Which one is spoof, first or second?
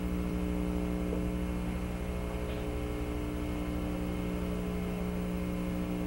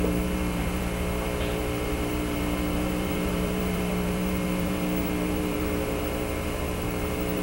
second